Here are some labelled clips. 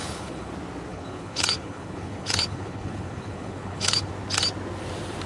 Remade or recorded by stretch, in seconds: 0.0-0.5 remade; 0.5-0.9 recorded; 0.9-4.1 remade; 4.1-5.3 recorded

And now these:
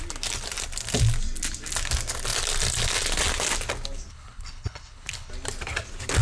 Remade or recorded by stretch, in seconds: 0.0-4.1 recorded; 4.1-5.3 remade; 5.3-6.2 recorded